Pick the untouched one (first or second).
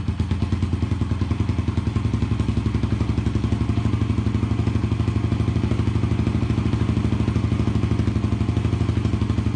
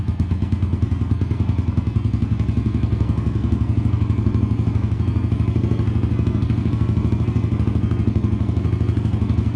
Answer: first